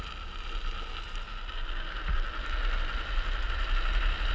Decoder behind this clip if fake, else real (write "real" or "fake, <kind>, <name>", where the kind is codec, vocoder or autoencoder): real